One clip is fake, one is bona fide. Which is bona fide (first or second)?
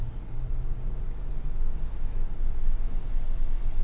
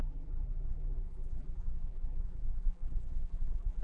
first